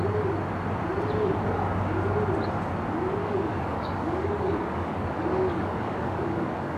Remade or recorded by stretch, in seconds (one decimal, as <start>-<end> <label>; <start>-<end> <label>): 0.0-3.2 recorded; 3.2-6.8 remade